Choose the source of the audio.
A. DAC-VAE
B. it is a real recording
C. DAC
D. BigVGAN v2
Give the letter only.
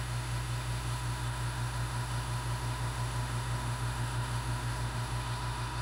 A